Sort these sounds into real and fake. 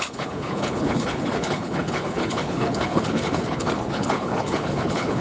fake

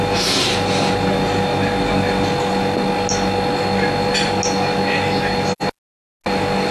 real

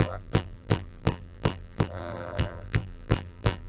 fake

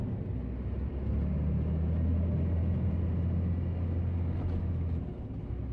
real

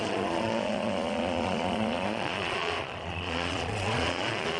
fake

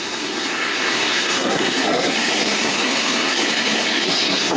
fake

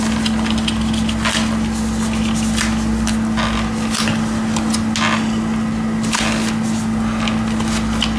real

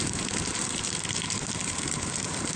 fake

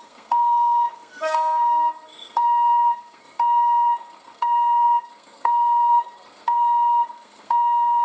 fake